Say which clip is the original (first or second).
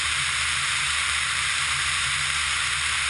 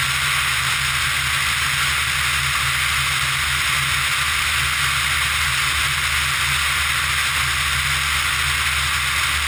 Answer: second